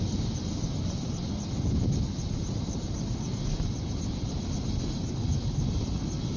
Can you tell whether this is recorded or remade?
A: recorded